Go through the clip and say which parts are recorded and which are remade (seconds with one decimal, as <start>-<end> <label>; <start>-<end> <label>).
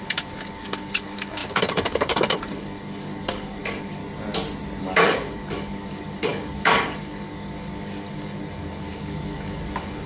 0.0-4.0 remade; 4.0-4.8 recorded; 4.8-10.1 remade